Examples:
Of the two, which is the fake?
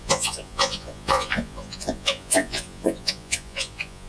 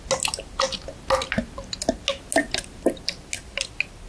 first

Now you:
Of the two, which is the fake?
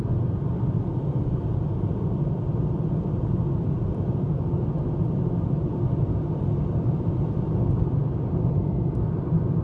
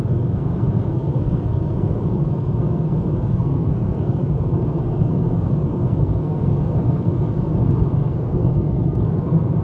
second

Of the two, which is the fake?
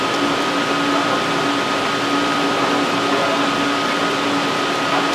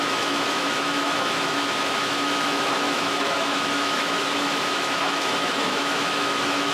second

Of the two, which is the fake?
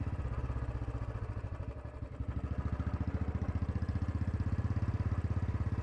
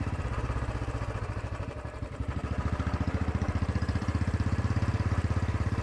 second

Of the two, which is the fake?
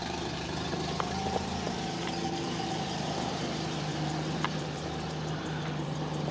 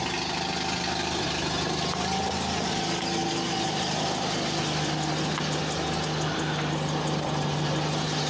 first